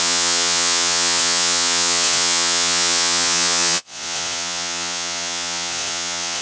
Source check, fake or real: fake